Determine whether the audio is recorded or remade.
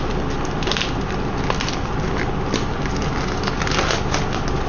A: recorded